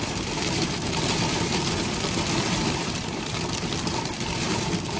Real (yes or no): no